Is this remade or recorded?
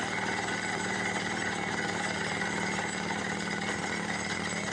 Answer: recorded